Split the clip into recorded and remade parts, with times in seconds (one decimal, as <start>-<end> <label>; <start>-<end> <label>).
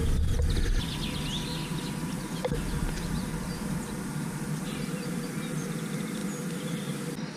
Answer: 0.0-1.7 recorded; 1.7-5.4 remade; 5.4-7.4 recorded